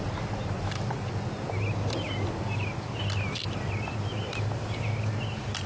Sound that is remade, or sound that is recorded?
recorded